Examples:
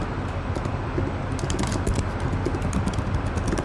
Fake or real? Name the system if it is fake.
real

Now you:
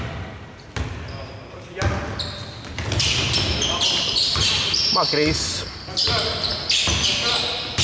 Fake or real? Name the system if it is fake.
real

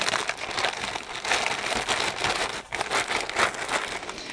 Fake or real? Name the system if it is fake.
real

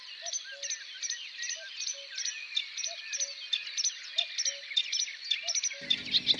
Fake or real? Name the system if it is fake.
real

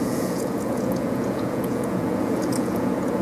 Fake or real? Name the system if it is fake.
fake, vocoder, Vocos